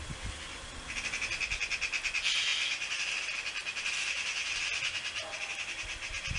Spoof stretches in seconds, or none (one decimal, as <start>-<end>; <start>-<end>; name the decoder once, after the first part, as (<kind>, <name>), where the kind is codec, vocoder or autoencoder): none